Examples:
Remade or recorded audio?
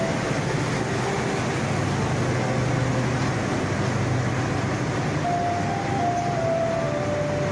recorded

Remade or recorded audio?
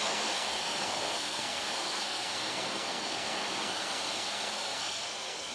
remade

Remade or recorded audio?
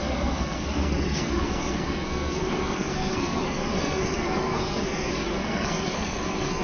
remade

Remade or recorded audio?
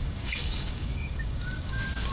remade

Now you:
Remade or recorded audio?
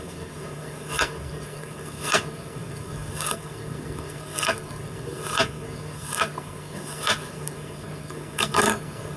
remade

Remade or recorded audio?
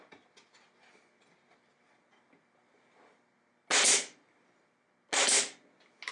recorded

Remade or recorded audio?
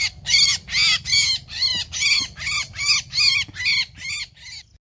recorded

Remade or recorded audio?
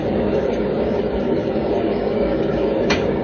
remade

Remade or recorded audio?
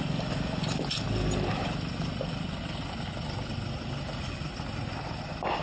recorded